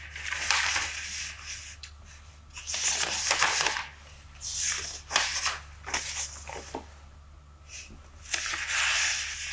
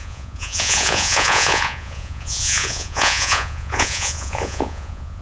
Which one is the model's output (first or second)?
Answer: second